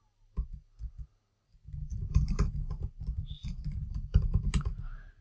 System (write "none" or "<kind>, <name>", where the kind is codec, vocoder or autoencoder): none